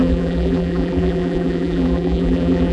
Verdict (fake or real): fake